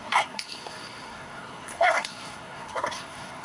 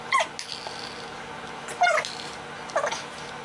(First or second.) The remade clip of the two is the first